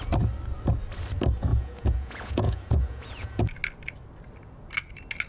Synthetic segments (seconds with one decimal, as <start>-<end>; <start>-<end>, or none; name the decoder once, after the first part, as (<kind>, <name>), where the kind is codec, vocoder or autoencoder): 1.5-3.4 (vocoder, Vocos)